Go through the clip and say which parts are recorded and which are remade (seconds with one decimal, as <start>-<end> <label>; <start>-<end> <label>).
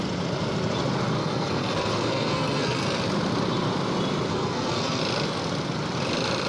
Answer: 0.0-1.2 recorded; 1.2-3.0 remade; 3.0-4.3 recorded; 4.3-5.0 remade; 5.0-6.5 recorded